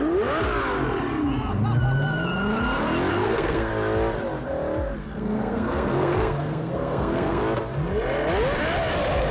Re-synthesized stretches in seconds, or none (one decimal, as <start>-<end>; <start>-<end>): 3.1-3.7; 5.0-7.4